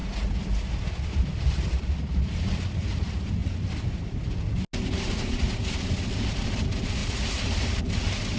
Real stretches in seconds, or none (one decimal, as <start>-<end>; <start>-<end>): 0.0-0.8; 3.4-5.9; 7.0-7.8